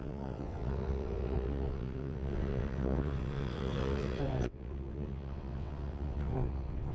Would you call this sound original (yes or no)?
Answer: no